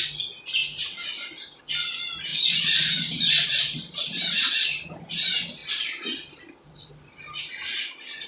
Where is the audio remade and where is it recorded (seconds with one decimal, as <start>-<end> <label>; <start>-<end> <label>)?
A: 0.0-2.3 recorded; 2.3-3.9 remade; 3.9-5.6 recorded; 5.6-6.9 remade; 6.9-8.3 recorded